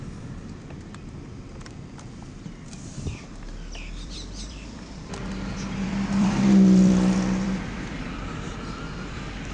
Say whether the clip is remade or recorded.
remade